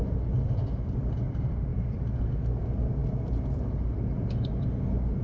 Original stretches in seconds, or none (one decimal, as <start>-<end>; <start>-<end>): 0.0-5.2